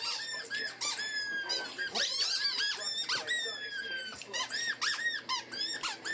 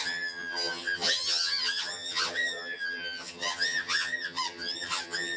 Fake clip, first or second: second